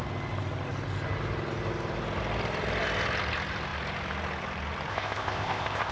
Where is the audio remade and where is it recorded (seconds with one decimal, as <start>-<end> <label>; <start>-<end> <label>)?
0.0-4.9 recorded; 4.9-5.9 remade